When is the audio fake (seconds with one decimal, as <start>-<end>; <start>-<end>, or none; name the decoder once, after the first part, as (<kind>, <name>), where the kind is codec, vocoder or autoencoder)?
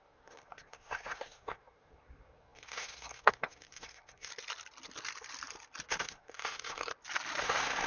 0.0-4.3 (codec, SNAC); 5.9-6.9; 7.4-7.9